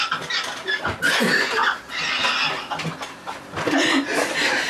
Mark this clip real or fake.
real